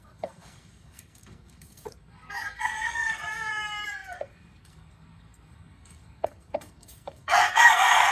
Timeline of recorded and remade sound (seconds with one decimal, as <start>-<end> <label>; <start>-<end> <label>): 0.0-8.1 remade